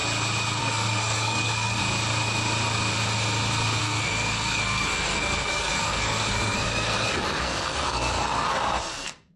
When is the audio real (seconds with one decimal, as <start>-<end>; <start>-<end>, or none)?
0.0-0.6; 1.8-3.8